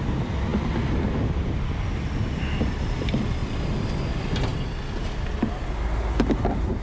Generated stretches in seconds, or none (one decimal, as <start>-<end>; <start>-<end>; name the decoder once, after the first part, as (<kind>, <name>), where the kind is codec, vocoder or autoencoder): none